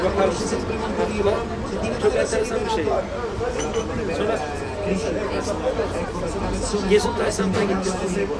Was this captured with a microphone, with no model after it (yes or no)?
yes